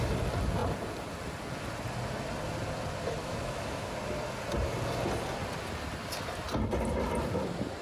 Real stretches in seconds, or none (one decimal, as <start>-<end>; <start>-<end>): 0.0-3.2; 3.9-7.8